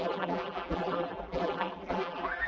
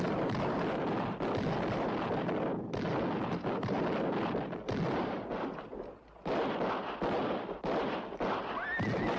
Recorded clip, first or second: second